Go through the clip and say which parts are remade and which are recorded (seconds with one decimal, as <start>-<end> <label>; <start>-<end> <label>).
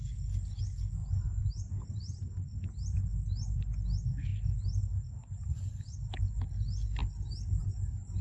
0.0-8.2 recorded